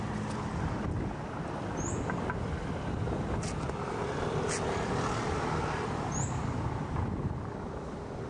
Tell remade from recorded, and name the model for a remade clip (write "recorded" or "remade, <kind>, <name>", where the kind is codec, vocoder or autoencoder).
recorded